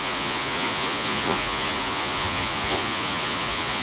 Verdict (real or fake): fake